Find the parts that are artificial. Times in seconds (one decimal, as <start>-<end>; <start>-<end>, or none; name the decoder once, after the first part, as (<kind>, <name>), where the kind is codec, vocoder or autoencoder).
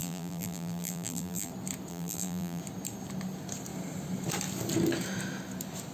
0.0-1.5 (vocoder, BigVGAN v2); 1.9-2.6